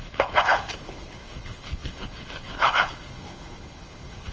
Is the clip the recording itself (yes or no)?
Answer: no